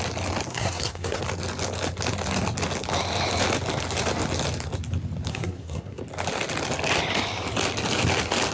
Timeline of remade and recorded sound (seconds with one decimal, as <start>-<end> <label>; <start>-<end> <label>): 0.0-0.5 recorded; 0.5-1.2 remade; 1.2-5.3 recorded; 5.3-6.0 remade; 6.0-8.5 recorded